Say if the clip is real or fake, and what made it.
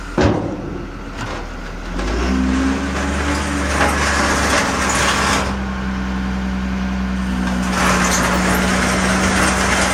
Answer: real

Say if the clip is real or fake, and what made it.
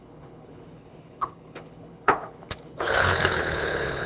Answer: fake, codec, HILCodec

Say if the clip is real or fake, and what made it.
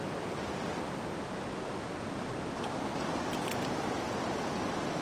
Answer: real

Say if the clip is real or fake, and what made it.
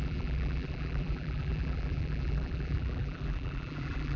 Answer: fake, vocoder, BigVGAN v2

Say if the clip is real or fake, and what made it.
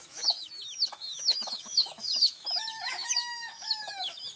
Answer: fake, autoencoder, DAC-VAE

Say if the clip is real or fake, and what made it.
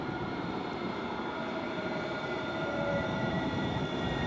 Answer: fake, vocoder, BigVGAN v2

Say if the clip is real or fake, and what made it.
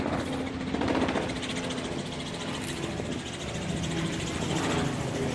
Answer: real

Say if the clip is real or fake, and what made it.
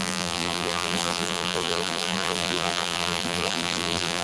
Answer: fake, vocoder, BigVGAN v2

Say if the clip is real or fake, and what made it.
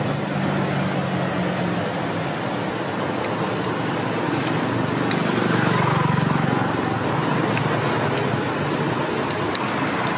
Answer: real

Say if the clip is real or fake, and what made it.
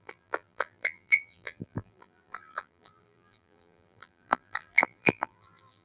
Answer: fake, vocoder, BigVGAN v2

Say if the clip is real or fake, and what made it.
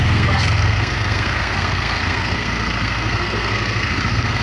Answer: fake, codec, SNAC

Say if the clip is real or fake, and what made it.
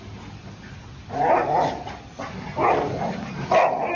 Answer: real